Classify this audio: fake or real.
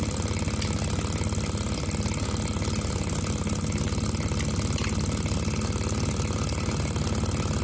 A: real